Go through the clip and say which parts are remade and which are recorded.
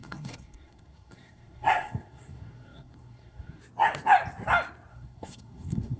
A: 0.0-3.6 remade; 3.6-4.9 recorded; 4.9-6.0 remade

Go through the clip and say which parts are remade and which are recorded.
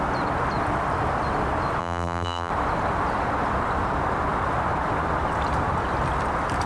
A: 0.0-1.8 recorded; 1.8-2.5 remade; 2.5-6.7 recorded